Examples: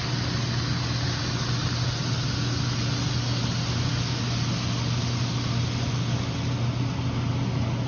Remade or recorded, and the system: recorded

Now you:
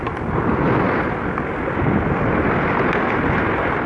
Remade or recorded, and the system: recorded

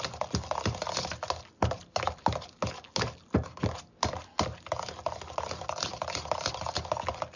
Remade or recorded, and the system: recorded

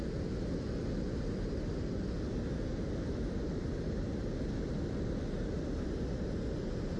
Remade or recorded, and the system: recorded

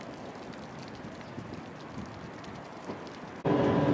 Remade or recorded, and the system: recorded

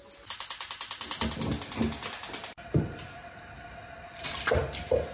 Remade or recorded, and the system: recorded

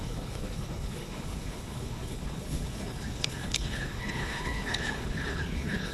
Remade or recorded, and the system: remade, codec, HILCodec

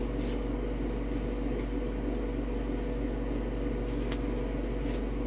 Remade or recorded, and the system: recorded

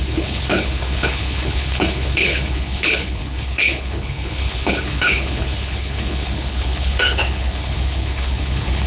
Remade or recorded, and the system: remade, codec, HILCodec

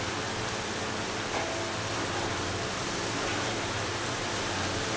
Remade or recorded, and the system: recorded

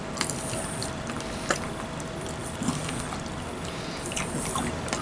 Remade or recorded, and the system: recorded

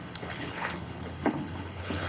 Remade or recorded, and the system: remade, codec, HILCodec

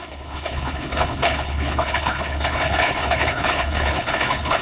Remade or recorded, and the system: remade, codec, HILCodec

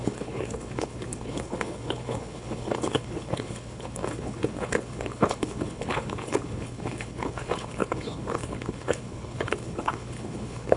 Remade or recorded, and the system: remade, codec, HILCodec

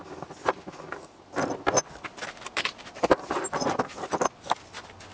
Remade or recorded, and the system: recorded